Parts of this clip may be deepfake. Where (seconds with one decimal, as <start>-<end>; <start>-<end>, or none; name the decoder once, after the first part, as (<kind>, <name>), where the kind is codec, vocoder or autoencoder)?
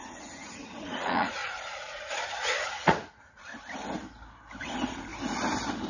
0.0-3.5 (vocoder, Vocos); 4.6-5.1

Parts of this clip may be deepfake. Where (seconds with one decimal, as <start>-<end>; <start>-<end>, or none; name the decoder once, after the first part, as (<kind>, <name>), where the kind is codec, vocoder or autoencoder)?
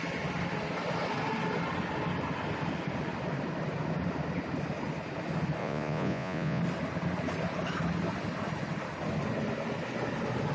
5.6-6.6 (vocoder, Vocos)